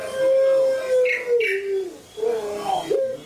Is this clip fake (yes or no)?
no